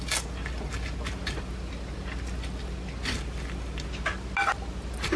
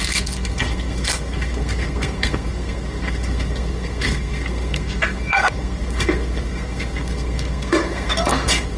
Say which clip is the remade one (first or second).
second